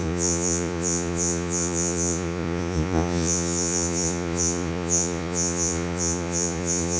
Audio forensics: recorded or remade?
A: remade